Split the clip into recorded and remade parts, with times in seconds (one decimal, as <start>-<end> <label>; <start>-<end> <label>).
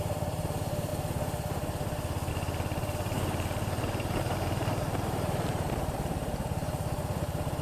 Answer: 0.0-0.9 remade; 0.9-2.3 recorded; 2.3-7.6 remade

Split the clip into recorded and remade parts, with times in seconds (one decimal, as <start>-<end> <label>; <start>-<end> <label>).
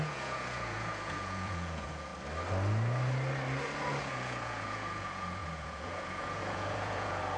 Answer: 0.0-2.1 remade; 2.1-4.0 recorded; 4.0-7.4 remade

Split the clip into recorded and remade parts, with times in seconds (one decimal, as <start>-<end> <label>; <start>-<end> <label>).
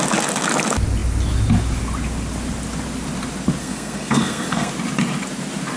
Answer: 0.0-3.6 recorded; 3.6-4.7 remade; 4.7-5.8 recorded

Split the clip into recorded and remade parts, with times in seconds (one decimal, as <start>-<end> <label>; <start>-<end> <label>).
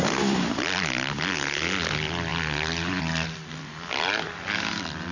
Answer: 0.0-5.1 recorded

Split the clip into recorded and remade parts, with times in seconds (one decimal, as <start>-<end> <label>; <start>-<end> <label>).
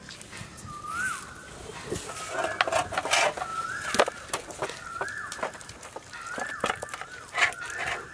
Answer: 0.0-8.1 recorded